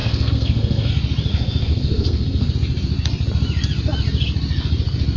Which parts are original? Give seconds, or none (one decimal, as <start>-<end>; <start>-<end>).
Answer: 0.9-1.3; 2.5-5.2

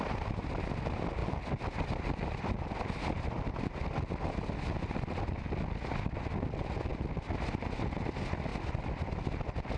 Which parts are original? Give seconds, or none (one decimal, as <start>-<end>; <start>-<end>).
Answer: 0.0-9.8

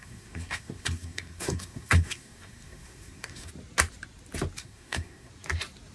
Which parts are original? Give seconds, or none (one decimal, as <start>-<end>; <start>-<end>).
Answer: 3.5-4.6; 5.3-5.9

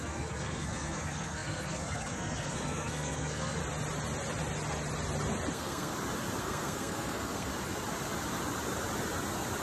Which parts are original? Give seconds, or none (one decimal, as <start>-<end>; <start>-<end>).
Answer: 3.6-5.5; 5.9-6.4; 7.5-9.6

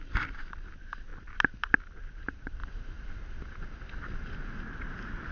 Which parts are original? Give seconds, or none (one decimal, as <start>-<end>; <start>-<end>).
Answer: 0.0-5.3

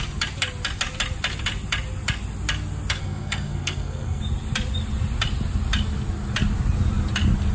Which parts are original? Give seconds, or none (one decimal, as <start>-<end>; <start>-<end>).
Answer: 0.0-3.0; 4.2-7.5